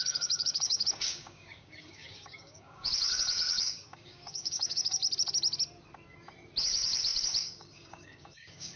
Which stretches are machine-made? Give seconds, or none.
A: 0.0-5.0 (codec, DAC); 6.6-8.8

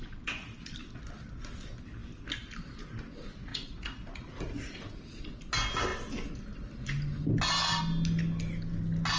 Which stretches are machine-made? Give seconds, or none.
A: 3.5-5.2 (vocoder, Vocos)

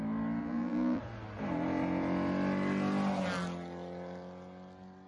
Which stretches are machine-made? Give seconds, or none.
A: 0.4-1.0 (vocoder, BigVGAN v2)

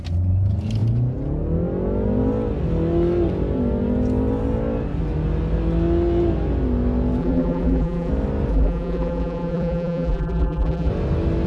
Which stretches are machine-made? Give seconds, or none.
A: 7.2-8.1 (vocoder, BigVGAN v2); 8.5-10.9

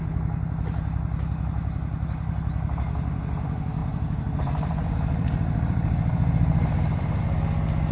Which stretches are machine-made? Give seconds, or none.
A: 3.8-7.2 (vocoder, BigVGAN v2)

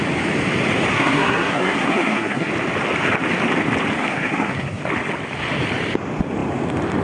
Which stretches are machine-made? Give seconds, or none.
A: 0.9-2.5 (codec, SNAC); 4.0-4.8